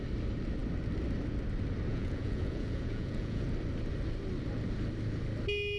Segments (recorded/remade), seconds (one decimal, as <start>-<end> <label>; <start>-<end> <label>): 0.0-1.9 recorded; 1.9-3.5 remade; 3.5-5.8 recorded